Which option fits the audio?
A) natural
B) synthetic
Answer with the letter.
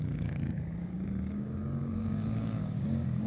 B